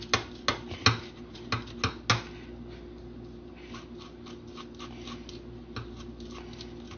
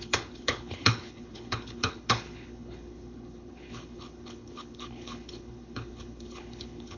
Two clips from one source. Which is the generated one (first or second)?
second